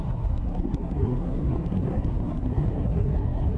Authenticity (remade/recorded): remade